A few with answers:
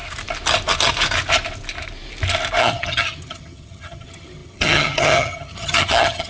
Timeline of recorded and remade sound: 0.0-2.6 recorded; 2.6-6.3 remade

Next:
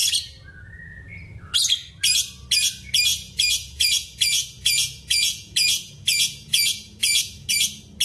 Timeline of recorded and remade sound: 0.0-3.1 recorded; 3.1-7.5 remade; 7.5-8.0 recorded

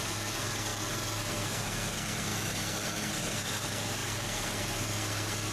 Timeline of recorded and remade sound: 0.0-5.5 remade

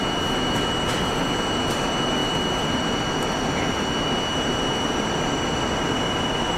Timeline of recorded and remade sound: 0.0-6.6 remade

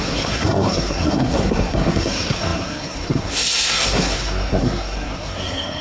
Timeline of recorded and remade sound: 0.0-5.8 remade

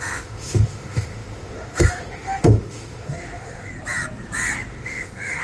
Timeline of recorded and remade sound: 0.0-3.7 remade; 3.7-4.7 recorded; 4.7-5.4 remade